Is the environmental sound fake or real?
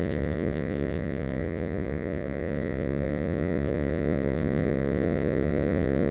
fake